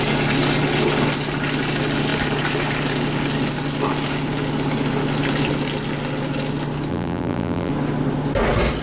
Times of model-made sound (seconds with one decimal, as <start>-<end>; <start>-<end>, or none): 6.9-7.7